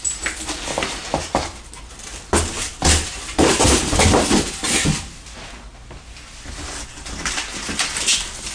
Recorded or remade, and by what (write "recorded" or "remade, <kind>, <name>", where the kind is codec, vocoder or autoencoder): recorded